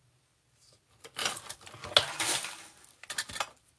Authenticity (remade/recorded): recorded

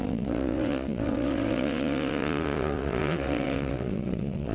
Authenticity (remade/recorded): remade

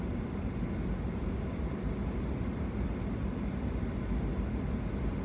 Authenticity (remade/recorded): recorded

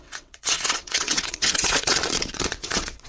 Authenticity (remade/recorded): remade